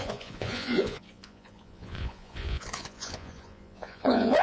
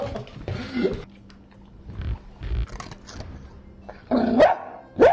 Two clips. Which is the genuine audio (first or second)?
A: second